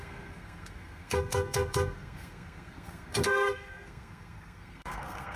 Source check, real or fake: fake